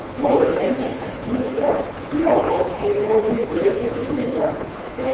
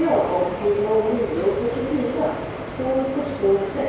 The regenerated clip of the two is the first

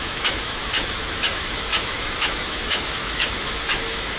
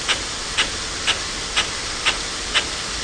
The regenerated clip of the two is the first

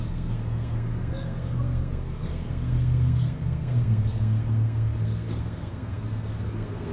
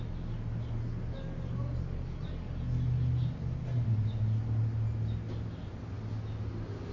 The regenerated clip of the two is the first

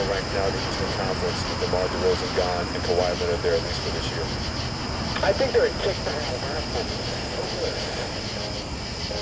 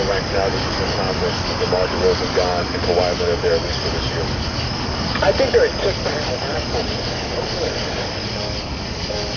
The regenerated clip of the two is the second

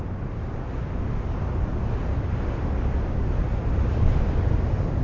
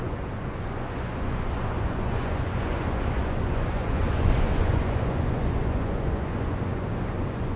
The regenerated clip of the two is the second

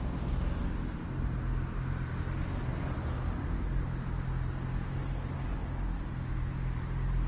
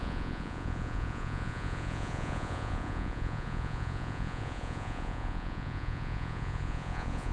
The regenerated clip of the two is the second